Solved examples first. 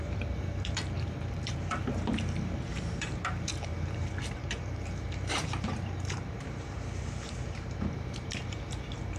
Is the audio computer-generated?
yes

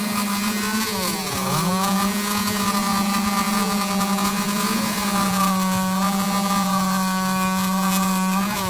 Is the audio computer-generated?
yes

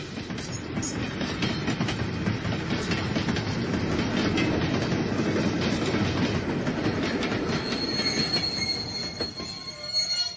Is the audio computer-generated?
no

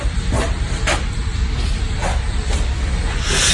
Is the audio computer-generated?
yes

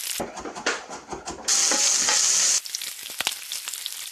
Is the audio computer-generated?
no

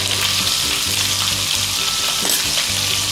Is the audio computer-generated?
no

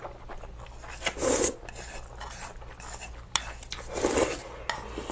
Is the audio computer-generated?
no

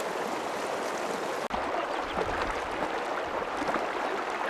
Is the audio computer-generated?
no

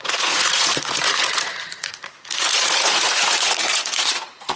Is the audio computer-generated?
yes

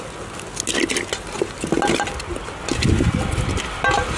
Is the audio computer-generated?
no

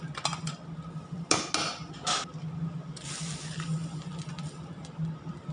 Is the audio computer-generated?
no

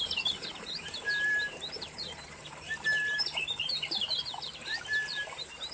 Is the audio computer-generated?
yes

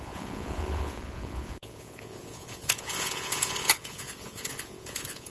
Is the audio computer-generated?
yes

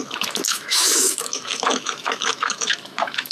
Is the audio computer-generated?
yes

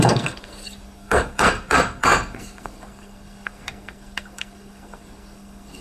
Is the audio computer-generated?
yes